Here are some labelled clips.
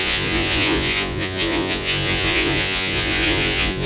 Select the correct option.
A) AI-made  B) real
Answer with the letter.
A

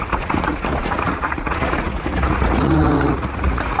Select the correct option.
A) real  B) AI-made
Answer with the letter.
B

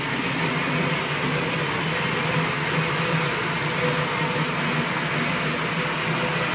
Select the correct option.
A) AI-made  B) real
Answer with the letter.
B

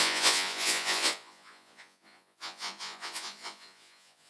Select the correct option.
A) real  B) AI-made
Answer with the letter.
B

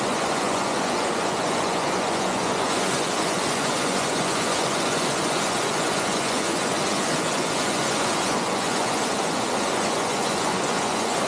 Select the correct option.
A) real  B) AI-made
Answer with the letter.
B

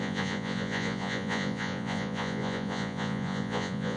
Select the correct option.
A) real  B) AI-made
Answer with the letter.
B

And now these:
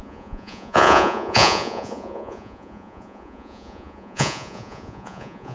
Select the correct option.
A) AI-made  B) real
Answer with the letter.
A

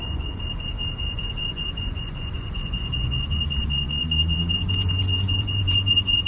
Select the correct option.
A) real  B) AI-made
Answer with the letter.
B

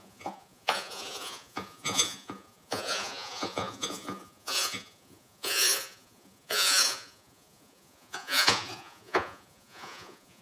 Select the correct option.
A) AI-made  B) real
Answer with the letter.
A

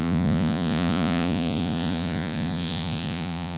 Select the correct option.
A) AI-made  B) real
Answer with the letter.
A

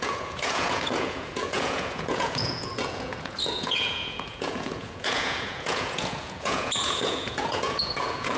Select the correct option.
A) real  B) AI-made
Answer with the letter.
B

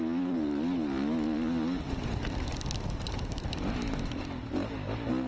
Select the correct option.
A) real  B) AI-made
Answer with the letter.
A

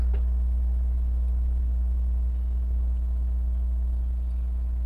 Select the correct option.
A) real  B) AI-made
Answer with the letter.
A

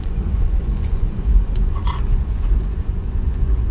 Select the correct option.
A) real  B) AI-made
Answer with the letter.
B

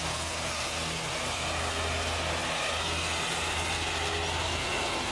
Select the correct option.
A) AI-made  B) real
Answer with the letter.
B